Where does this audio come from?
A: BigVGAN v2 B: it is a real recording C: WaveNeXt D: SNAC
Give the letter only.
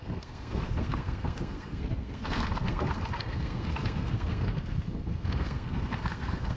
D